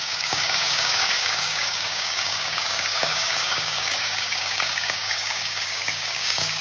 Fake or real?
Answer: fake